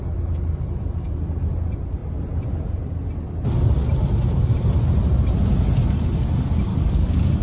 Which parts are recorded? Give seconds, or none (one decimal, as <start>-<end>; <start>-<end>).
0.0-6.7